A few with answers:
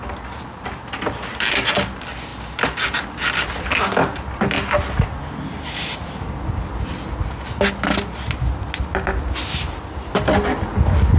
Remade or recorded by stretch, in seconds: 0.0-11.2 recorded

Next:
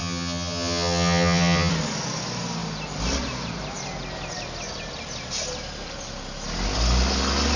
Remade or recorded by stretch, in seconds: 0.0-1.7 remade; 1.7-7.6 recorded

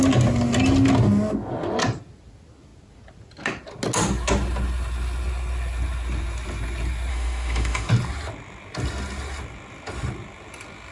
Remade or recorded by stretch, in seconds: 0.0-7.1 recorded; 7.1-7.9 remade; 7.9-10.9 recorded

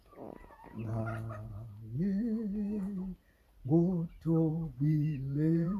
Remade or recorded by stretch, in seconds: 0.0-1.0 remade; 1.0-4.5 recorded; 4.5-5.8 remade

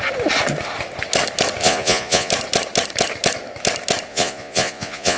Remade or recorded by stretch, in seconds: 0.0-1.6 recorded; 1.6-2.3 remade; 2.3-4.1 recorded; 4.1-5.2 remade

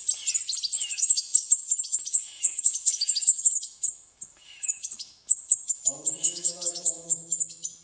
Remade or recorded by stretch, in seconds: 0.0-0.8 recorded; 0.8-7.8 remade